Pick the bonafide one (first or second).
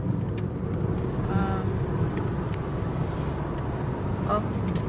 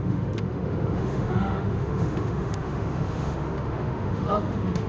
first